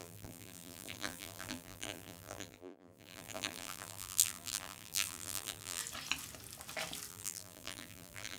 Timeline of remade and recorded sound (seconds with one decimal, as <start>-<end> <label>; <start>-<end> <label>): 0.0-5.8 remade; 5.8-7.1 recorded; 7.1-8.4 remade